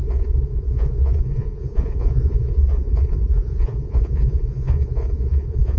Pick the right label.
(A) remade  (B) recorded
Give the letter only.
A